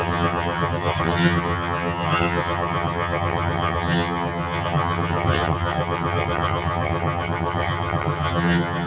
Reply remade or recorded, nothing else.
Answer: remade